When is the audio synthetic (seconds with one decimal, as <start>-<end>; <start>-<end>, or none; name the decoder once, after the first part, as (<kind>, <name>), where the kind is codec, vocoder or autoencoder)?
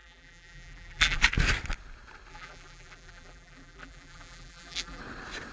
0.0-1.2 (vocoder, BigVGAN v2); 2.3-5.0